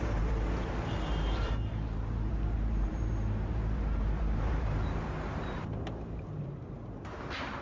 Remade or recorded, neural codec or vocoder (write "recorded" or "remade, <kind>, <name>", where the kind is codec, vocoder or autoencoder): remade, vocoder, BigVGAN v2